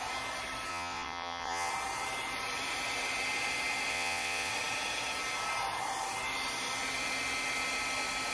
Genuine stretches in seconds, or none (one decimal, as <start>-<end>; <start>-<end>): 0.0-0.7; 1.7-3.9; 4.5-8.3